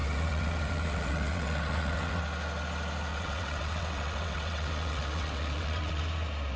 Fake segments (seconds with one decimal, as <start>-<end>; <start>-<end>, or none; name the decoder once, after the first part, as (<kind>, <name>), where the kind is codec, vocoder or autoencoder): 0.0-2.2 (vocoder, WaveNeXt); 3.1-6.0